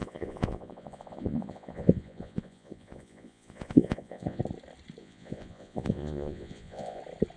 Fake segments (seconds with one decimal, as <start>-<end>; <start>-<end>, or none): 0.0-4.4; 5.0-7.0